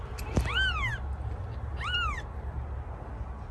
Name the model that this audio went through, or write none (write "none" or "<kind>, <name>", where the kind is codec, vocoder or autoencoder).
none